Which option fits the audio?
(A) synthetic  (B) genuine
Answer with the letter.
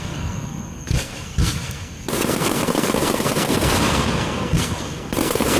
A